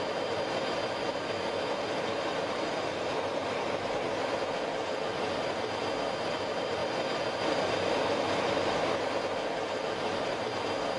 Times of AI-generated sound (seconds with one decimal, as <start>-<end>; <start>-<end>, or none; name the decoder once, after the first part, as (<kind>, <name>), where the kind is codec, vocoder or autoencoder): none